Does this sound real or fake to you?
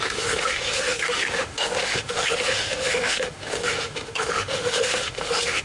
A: fake